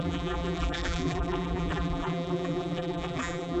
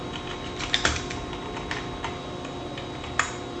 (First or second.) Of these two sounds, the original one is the second